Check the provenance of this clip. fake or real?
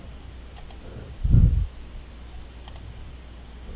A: real